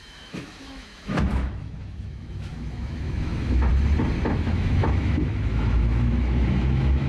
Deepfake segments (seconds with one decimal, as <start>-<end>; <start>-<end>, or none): 0.0-3.7; 4.3-7.1